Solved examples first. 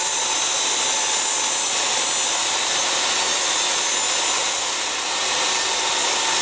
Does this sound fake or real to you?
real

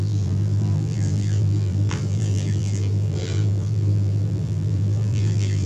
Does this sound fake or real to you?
fake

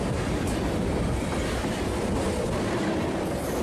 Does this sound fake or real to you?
fake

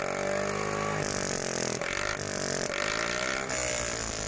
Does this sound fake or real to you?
real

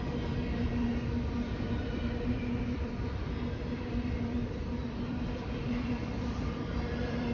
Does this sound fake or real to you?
fake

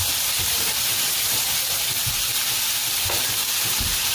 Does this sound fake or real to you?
fake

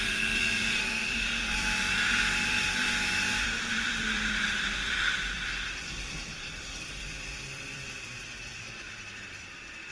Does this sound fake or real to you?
fake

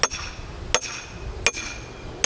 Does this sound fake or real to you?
real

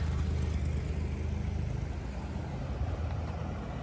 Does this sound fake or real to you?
real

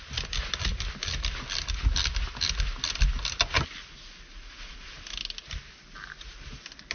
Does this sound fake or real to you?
real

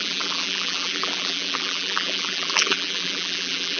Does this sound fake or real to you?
fake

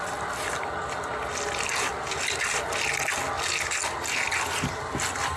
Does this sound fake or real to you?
real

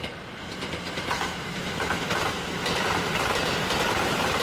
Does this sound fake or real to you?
fake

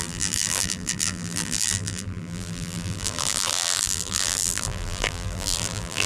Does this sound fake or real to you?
fake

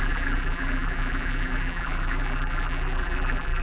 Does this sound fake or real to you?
fake